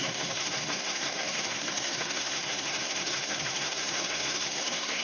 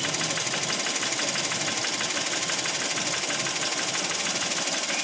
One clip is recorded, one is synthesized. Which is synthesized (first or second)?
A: first